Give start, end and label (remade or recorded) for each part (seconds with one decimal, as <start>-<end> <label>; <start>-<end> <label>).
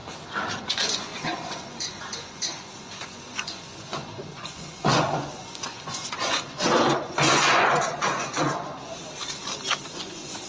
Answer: 0.0-0.6 recorded; 0.6-9.0 remade; 9.0-9.9 recorded; 9.9-10.5 remade